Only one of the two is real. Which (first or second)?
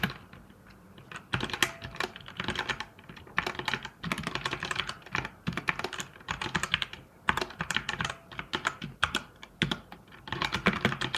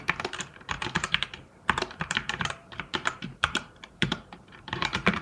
first